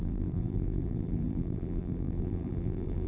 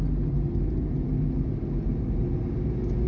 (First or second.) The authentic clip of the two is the second